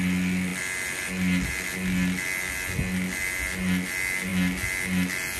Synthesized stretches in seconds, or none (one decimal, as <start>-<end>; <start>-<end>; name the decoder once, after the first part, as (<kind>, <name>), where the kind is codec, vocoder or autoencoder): none